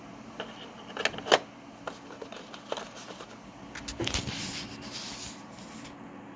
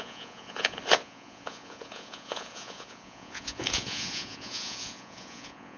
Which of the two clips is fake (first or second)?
second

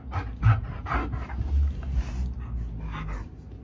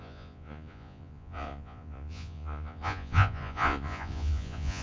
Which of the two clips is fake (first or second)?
second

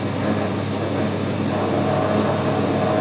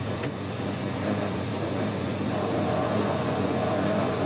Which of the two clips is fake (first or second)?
second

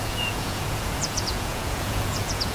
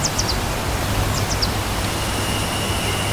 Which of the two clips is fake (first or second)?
first